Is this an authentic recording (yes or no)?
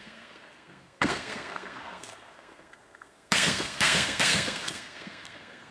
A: no